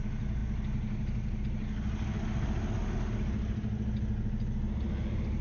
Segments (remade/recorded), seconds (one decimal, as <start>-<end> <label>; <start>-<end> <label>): 0.0-5.4 recorded